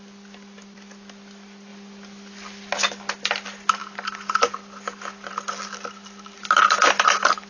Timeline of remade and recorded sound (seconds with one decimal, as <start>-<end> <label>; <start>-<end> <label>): 0.0-7.5 recorded